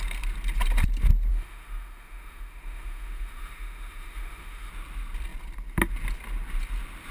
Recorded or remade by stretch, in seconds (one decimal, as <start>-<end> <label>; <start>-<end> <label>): 0.0-1.3 recorded; 1.3-4.7 remade; 4.7-7.1 recorded